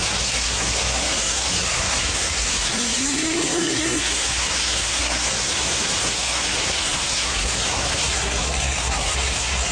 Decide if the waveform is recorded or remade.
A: remade